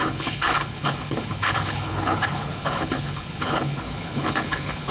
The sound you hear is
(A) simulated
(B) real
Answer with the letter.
A